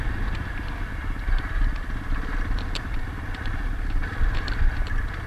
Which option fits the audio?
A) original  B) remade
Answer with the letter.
B